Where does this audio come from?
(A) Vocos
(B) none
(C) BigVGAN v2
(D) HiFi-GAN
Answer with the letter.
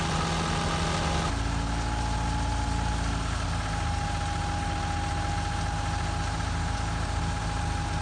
B